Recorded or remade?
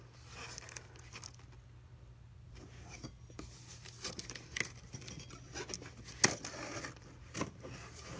recorded